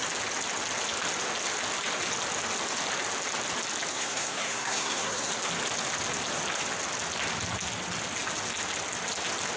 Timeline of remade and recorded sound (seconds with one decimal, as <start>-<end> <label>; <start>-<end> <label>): 0.0-3.9 recorded; 3.9-5.3 remade; 5.3-9.6 recorded

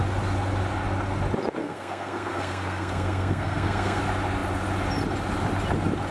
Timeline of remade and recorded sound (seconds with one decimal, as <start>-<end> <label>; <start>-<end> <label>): 0.0-1.6 recorded; 1.6-4.0 remade; 4.0-6.1 recorded